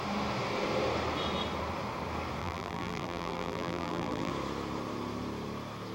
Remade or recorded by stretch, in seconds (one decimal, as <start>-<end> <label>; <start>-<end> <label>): 0.0-2.4 recorded; 2.4-4.3 remade; 4.3-5.9 recorded